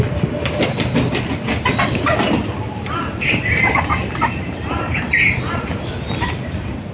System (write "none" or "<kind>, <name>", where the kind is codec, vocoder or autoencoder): none